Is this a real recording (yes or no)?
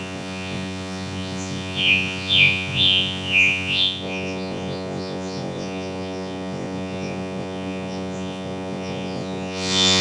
no